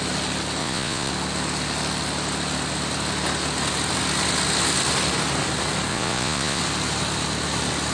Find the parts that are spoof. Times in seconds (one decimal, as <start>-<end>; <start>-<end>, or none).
0.6-1.1; 5.9-6.6